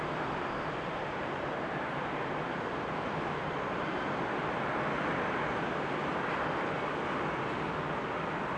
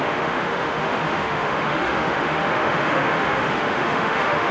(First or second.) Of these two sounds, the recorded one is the first